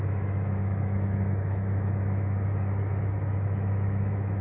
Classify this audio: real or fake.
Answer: fake